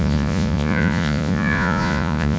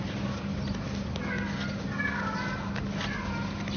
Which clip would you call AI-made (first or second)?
first